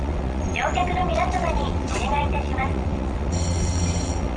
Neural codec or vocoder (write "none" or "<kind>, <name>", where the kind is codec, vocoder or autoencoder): vocoder, WaveNeXt